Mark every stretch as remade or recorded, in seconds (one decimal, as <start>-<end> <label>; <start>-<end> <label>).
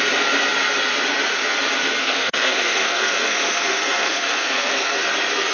0.0-2.0 recorded; 2.0-4.9 remade; 4.9-5.5 recorded